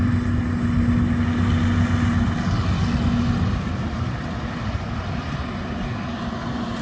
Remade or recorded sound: recorded